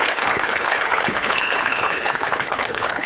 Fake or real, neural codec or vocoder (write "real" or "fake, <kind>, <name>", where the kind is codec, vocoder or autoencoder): fake, codec, HILCodec